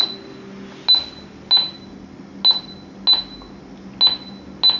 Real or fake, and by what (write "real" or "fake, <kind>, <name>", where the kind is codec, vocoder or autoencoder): real